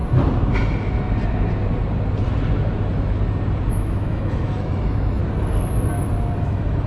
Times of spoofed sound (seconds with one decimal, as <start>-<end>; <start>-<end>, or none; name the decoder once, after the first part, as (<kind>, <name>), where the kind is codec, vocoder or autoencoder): 3.7-5.2 (autoencoder, DAC-VAE); 6.4-6.9